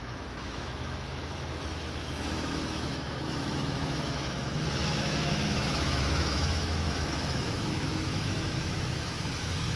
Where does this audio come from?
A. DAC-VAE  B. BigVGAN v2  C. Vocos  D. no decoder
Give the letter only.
A